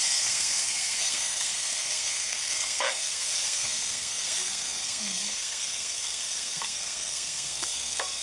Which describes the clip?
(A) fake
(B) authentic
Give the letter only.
A